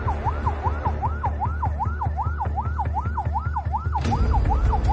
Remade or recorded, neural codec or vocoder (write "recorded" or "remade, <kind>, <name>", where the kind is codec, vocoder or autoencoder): recorded